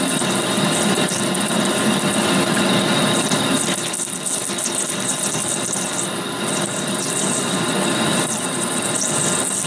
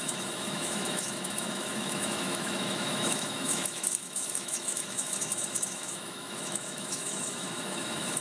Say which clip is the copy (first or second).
second